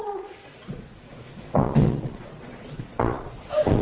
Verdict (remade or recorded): remade